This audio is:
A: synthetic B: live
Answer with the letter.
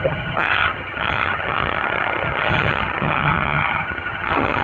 A